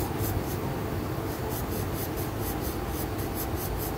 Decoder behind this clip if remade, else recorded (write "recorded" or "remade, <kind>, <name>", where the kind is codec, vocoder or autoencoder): recorded